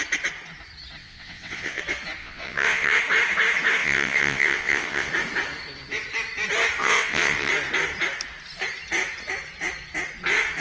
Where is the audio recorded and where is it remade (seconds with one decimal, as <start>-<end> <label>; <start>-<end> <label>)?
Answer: 0.0-1.0 recorded; 1.0-1.8 remade; 1.8-2.2 recorded; 2.2-3.0 remade; 3.0-3.8 recorded; 3.8-5.1 remade; 5.1-6.8 recorded; 6.8-7.5 remade; 7.5-10.6 recorded